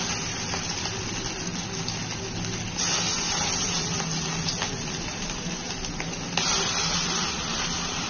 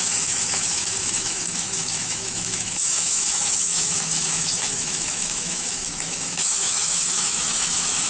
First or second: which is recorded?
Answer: first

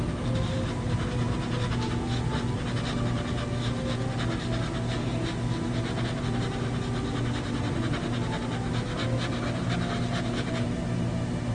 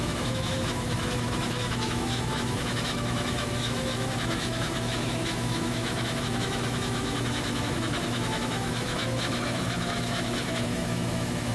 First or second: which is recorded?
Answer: first